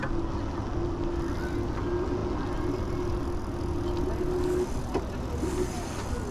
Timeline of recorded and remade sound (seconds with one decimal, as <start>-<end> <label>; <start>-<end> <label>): 0.0-6.3 recorded